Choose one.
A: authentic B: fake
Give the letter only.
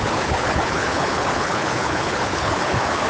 B